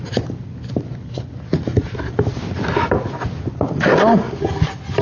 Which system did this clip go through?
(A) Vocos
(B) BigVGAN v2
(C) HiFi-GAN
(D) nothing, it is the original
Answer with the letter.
D